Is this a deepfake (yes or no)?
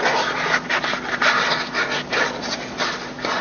no